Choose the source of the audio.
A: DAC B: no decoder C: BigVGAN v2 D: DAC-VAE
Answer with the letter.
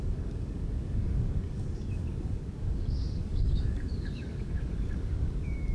A